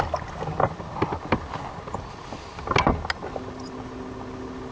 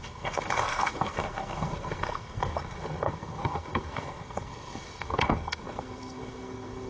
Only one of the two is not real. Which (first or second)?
second